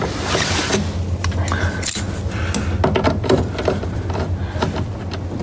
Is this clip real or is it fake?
real